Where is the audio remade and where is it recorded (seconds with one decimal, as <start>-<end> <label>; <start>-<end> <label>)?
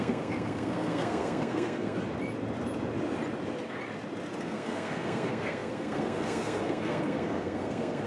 0.0-2.0 remade; 2.0-4.4 recorded; 4.4-8.1 remade